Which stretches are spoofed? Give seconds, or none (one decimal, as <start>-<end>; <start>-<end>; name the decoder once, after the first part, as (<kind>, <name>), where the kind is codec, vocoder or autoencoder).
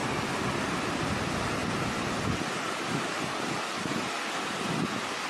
none